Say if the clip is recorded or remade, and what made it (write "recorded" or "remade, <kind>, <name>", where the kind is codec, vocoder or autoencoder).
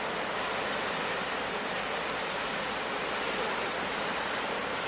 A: remade, vocoder, BigVGAN v2